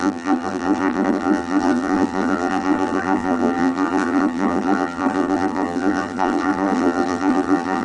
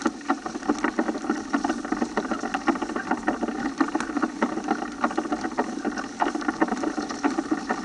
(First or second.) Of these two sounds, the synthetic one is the first